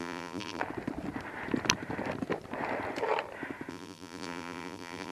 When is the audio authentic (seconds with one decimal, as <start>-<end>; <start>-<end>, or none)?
0.6-3.7